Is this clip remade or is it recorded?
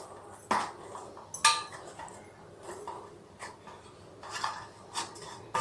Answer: recorded